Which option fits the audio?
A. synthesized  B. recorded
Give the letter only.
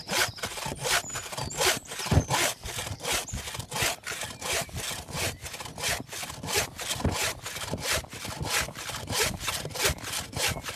B